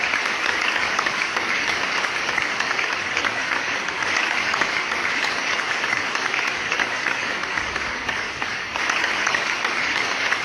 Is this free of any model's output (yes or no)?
no